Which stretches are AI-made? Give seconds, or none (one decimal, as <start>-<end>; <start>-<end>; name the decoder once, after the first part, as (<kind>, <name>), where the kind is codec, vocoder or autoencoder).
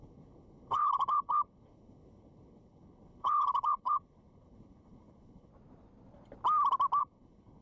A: 0.0-5.5 (codec, HILCodec); 7.0-7.6